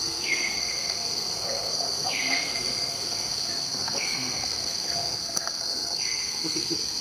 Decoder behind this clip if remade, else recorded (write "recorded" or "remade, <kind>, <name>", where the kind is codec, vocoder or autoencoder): remade, codec, SNAC